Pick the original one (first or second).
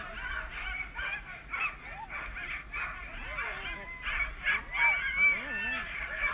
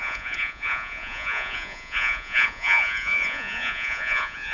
first